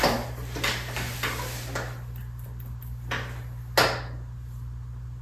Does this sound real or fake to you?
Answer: real